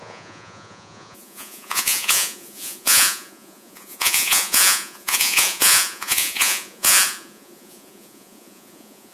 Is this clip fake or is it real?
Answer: fake